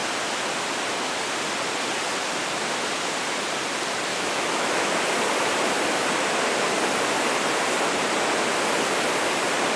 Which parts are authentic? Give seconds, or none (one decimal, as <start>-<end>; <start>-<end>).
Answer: 0.0-4.1; 4.9-9.8